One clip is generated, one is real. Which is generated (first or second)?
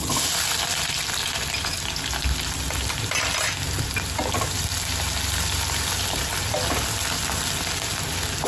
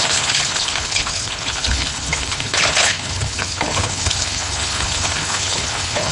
second